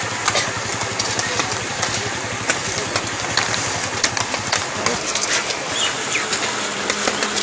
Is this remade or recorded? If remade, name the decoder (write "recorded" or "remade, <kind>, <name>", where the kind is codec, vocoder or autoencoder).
recorded